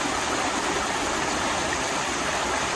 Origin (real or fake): real